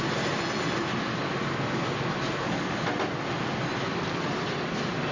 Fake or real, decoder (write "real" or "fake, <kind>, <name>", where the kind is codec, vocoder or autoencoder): real